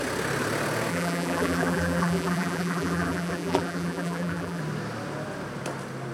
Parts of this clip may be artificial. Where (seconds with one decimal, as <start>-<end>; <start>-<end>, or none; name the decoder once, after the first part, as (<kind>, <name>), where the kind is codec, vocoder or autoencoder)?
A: 0.9-4.6 (vocoder, BigVGAN v2)